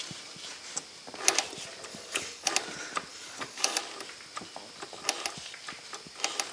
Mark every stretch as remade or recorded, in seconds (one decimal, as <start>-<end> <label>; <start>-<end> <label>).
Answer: 0.0-1.9 recorded; 1.9-2.5 remade; 2.5-3.1 recorded; 3.1-3.8 remade; 3.8-6.5 recorded